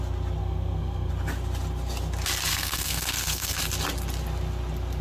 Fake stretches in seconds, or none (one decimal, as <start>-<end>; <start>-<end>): 0.4-1.1; 2.5-3.6